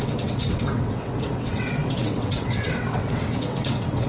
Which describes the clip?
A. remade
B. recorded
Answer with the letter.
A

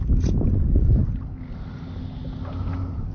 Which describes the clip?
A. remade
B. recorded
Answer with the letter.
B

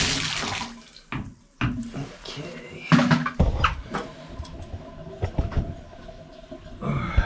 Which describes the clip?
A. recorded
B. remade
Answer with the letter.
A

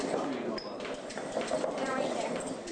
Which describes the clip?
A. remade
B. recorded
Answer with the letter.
B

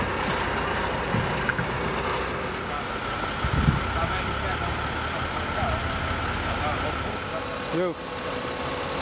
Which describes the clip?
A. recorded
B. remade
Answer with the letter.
A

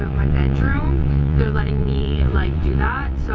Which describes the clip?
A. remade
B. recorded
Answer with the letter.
A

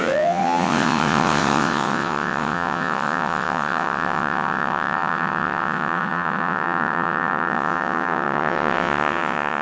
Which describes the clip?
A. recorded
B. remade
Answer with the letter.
B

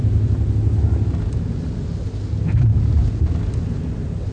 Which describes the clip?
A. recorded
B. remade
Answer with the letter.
A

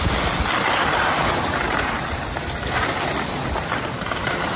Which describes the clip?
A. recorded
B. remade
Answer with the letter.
A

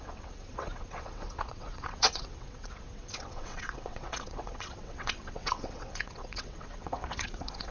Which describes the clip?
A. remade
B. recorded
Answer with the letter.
A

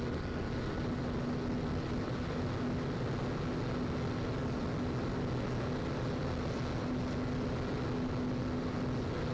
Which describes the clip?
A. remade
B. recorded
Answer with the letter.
B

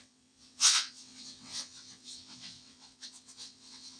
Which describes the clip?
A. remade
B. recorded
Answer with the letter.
A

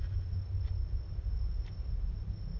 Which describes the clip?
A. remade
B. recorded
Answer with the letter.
B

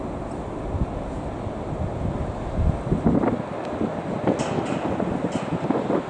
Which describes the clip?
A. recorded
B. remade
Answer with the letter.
A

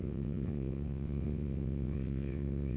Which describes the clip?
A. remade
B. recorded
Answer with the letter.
A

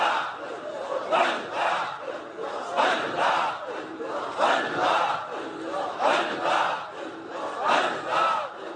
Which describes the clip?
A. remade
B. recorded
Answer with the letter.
B